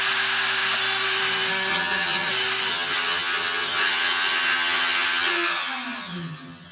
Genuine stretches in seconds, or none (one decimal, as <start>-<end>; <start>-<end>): 0.0-1.7; 2.3-2.7